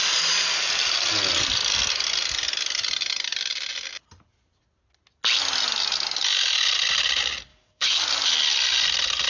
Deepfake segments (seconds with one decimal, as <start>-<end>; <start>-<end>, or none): 7.5-8.0

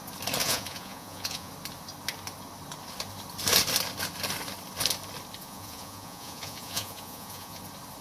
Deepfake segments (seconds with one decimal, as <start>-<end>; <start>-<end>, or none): 0.4-1.5; 5.4-7.6